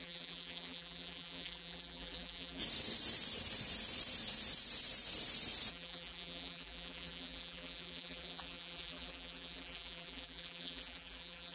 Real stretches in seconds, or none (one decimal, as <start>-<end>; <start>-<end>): 2.6-5.7